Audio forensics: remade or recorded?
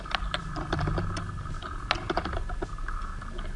recorded